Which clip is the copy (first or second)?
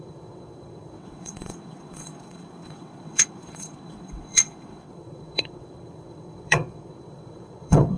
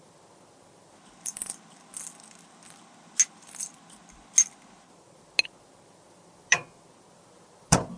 first